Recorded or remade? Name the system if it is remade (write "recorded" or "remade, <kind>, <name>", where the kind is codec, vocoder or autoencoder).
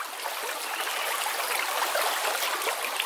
recorded